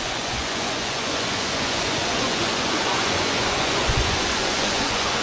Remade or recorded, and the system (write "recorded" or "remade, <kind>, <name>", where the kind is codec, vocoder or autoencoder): remade, vocoder, Vocos